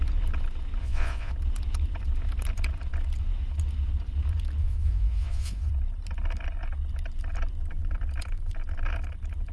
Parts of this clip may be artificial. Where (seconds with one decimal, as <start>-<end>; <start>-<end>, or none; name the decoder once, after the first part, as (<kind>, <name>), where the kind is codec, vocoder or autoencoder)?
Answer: 0.8-1.3 (vocoder, Vocos); 4.6-5.7